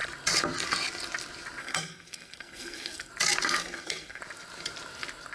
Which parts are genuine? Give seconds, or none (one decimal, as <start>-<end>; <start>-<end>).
0.0-1.6; 3.1-3.6; 4.2-5.3